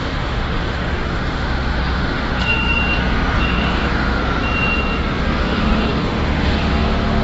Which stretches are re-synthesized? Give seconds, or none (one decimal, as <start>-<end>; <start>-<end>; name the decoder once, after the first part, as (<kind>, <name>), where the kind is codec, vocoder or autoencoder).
0.0-2.8 (autoencoder, DAC-VAE); 3.4-4.2; 5.2-7.2